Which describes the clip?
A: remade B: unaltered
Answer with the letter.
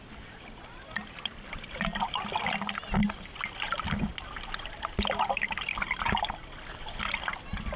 B